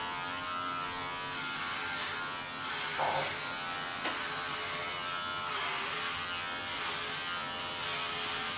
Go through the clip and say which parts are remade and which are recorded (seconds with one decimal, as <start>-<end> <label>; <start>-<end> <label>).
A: 0.0-8.6 recorded